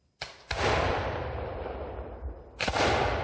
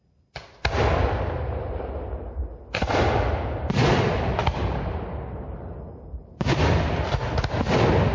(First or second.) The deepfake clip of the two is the first